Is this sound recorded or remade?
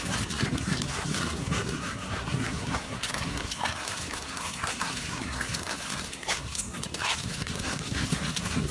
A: remade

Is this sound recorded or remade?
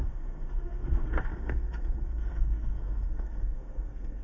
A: remade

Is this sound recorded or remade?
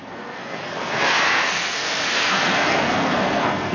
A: remade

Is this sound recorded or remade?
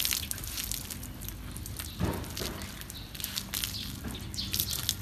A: recorded